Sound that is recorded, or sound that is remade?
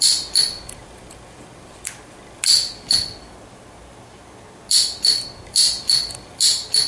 recorded